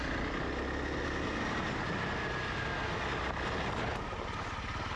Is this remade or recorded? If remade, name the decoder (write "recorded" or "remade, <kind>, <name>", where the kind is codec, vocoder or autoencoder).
recorded